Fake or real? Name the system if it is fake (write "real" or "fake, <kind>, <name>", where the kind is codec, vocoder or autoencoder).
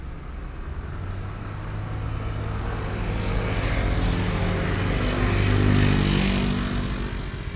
real